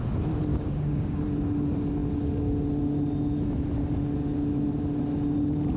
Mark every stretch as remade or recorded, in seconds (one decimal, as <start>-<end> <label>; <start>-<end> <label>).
0.0-0.5 recorded; 0.5-1.2 remade; 1.2-5.8 recorded